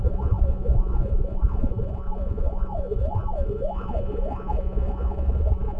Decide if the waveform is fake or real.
fake